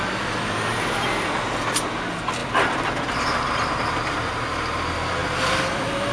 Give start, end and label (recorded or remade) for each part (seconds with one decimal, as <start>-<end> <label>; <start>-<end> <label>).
0.0-2.4 recorded; 2.4-3.1 remade; 3.1-5.2 recorded; 5.2-6.1 remade